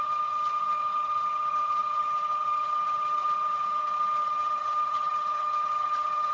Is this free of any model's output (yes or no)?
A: no